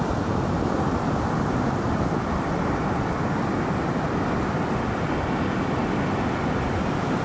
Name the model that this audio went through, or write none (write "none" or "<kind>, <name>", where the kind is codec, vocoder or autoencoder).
none